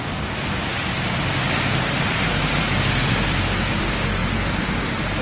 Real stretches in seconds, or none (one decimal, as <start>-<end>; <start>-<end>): 0.0-5.2